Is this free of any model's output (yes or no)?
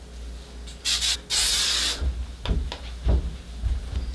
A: yes